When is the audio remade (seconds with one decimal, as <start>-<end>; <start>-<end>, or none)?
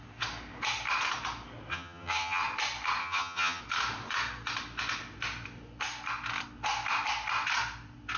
1.7-2.4; 3.0-3.6